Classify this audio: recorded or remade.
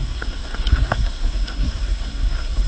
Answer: remade